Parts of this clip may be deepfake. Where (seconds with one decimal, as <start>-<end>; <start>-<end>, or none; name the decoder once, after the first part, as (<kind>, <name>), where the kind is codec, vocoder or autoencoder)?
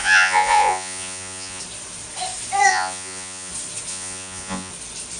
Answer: 0.0-1.6 (vocoder, Vocos); 2.7-3.5; 3.9-4.7